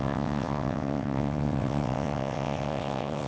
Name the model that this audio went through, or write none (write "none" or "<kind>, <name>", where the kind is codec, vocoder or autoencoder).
vocoder, WaveNeXt